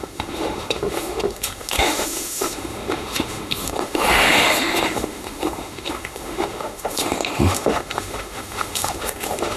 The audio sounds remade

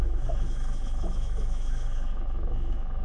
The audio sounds remade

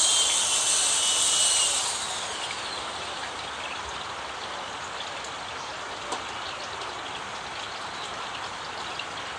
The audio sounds recorded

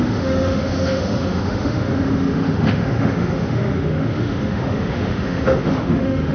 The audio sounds remade